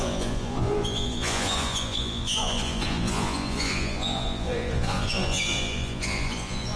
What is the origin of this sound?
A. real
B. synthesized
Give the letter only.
B